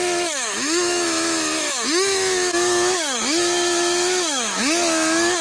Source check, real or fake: fake